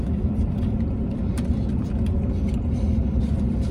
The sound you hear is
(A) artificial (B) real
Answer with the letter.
A